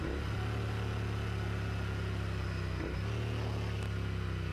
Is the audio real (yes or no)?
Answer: yes